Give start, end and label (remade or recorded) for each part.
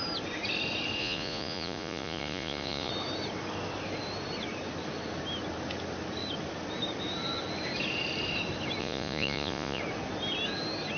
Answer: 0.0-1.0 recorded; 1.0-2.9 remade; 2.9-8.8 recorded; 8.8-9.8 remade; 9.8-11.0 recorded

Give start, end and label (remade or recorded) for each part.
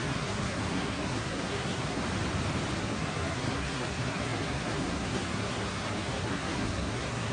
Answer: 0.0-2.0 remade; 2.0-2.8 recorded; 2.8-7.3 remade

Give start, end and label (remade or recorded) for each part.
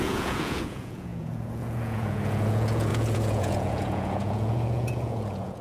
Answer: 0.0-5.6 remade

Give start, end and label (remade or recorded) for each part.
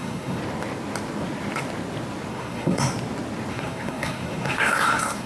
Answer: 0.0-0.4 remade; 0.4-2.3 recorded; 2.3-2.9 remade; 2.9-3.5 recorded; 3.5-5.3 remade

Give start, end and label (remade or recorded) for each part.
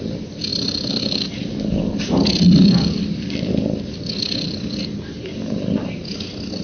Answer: 0.0-6.6 recorded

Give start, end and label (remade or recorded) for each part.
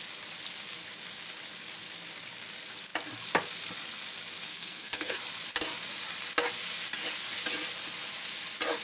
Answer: 0.0-4.5 recorded; 4.5-5.2 remade; 5.2-8.8 recorded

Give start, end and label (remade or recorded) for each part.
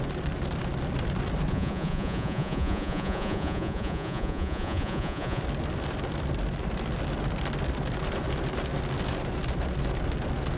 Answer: 0.0-1.5 recorded; 1.5-5.4 remade; 5.4-10.6 recorded